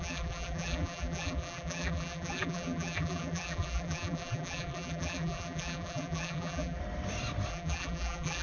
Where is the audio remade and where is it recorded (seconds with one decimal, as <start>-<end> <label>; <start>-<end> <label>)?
0.0-6.8 remade; 6.8-7.5 recorded; 7.5-8.4 remade